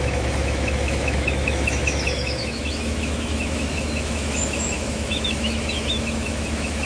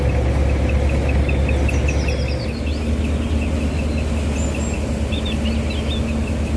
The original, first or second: second